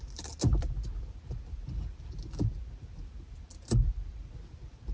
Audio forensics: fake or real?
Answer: real